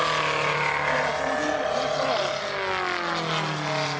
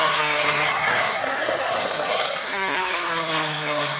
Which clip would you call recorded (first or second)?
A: first